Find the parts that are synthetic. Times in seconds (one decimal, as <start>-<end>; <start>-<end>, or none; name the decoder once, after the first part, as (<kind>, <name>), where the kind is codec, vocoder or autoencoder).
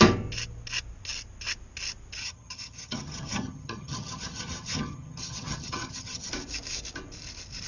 2.2-6.3 (vocoder, HiFi-GAN)